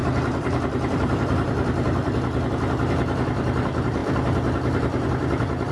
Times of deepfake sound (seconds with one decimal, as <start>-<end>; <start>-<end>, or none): 0.0-5.7